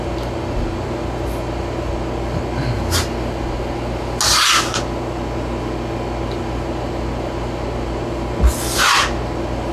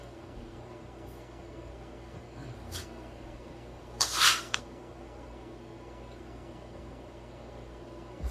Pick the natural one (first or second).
first